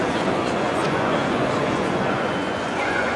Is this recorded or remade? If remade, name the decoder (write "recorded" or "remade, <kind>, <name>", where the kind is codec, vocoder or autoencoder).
remade, vocoder, Vocos